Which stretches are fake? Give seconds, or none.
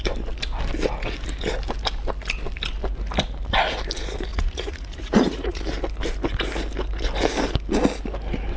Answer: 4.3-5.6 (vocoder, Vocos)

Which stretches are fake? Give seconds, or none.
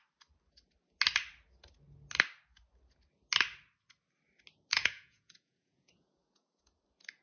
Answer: 4.7-6.8 (vocoder, Vocos)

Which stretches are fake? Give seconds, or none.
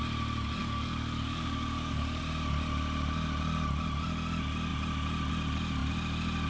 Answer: 0.6-2.2 (codec, DAC)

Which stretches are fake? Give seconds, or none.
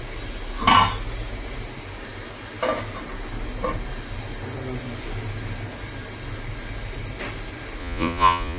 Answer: 7.8-8.6 (vocoder, Vocos)